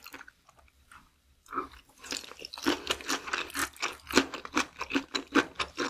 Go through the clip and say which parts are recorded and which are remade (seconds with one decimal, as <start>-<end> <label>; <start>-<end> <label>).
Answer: 0.0-5.9 recorded